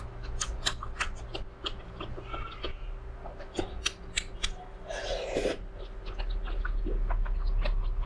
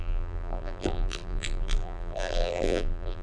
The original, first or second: first